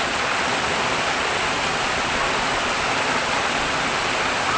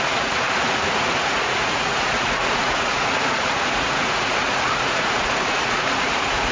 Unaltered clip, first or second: first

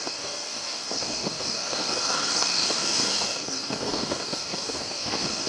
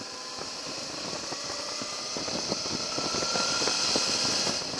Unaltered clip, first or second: second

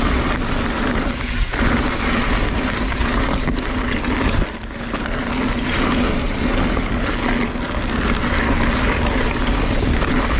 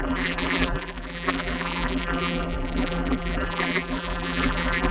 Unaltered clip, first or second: first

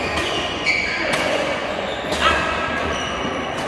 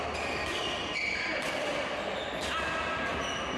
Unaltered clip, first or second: second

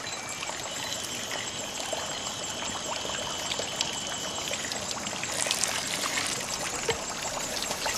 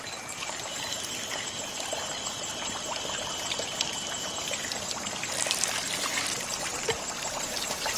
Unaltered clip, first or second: first